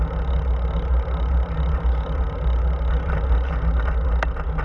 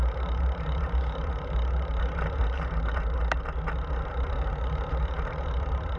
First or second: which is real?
first